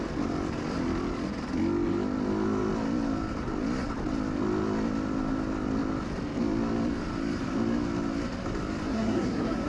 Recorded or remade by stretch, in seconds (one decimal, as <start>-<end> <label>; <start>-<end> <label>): 0.0-8.9 recorded; 8.9-9.7 remade